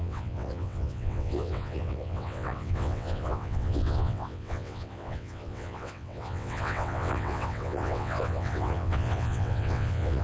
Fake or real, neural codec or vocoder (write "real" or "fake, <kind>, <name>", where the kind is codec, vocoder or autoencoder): fake, vocoder, WaveNeXt